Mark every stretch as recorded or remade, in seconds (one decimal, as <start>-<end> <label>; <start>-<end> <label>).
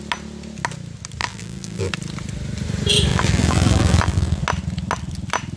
0.0-1.2 recorded; 1.2-1.9 remade; 1.9-3.1 recorded; 3.1-4.4 remade; 4.4-5.6 recorded